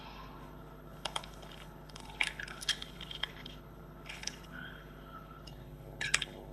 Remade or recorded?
remade